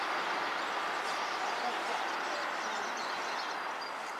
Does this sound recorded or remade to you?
recorded